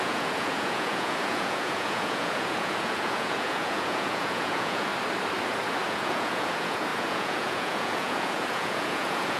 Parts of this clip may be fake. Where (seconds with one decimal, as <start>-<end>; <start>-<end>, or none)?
0.0-4.9; 5.9-9.4